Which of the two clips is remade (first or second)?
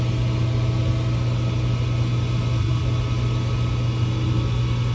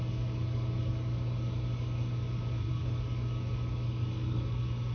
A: second